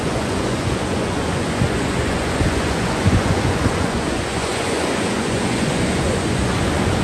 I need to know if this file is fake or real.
fake